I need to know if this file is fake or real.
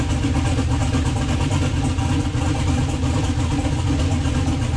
real